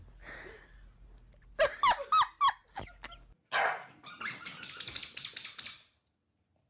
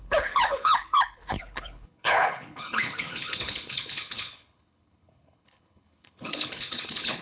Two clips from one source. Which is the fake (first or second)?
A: second